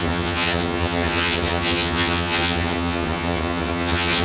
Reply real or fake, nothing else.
fake